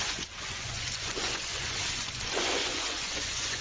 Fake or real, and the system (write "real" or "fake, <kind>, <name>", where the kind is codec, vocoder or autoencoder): fake, vocoder, Vocos